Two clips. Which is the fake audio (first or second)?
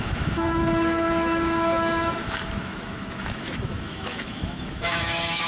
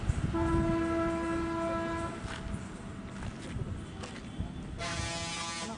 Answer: first